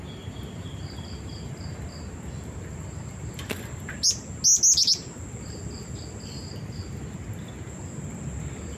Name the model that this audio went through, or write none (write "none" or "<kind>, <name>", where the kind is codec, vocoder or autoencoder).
none